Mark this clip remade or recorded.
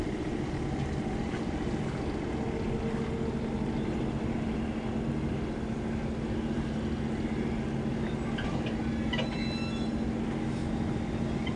recorded